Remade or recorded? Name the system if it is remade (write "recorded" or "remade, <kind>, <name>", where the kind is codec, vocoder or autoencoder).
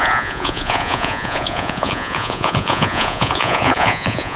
remade, vocoder, Vocos